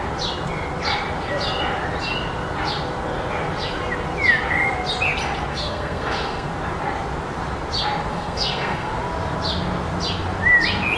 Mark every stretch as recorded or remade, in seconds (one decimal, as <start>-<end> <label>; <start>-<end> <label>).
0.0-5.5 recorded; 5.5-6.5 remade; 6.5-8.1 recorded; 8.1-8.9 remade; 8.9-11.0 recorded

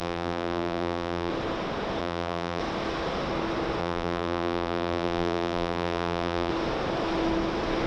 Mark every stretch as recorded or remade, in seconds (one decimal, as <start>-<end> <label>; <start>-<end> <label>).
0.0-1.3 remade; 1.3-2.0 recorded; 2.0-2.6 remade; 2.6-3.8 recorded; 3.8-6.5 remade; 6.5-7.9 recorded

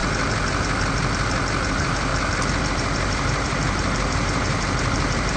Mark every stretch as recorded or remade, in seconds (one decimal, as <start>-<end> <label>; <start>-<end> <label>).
0.0-1.7 recorded; 1.7-2.1 remade; 2.1-2.7 recorded; 2.7-5.4 remade